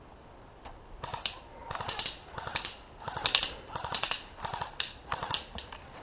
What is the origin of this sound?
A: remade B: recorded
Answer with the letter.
B